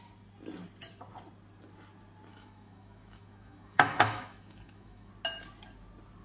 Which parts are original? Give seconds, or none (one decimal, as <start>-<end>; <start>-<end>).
0.0-2.3; 5.1-6.2